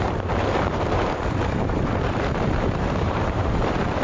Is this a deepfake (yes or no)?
yes